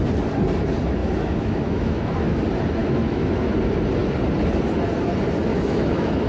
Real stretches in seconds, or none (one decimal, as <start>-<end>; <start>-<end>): 0.0-1.0; 2.4-2.8; 3.5-5.5